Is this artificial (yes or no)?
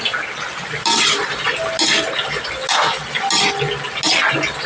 no